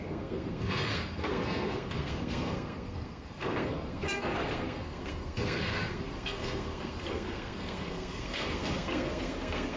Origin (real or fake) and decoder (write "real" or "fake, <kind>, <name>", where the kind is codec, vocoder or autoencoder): fake, codec, SNAC